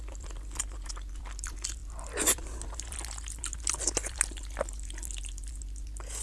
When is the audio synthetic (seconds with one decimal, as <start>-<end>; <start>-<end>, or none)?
none